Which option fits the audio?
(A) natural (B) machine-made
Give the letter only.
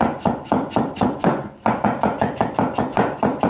B